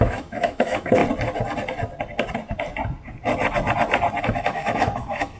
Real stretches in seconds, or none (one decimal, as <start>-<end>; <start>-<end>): 1.0-4.2